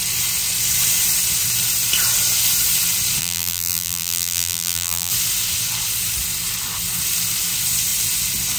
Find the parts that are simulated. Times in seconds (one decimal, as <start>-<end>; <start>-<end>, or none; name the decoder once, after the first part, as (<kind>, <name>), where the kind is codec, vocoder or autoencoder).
3.2-5.1 (vocoder, BigVGAN v2)